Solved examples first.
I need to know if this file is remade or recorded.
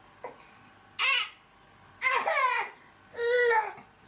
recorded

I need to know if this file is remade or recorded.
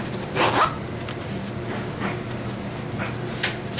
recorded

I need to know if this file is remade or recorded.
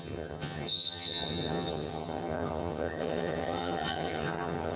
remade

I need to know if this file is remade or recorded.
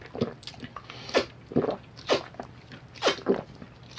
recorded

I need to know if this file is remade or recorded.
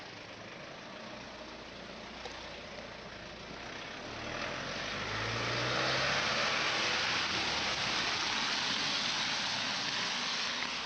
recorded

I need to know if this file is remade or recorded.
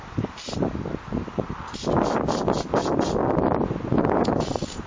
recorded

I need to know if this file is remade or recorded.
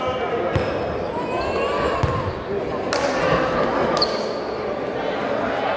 recorded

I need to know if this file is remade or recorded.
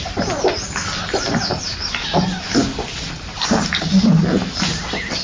recorded